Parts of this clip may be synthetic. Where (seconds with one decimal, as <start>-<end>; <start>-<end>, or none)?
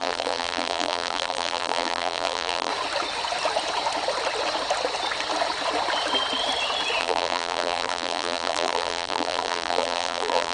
0.0-2.7; 7.0-10.5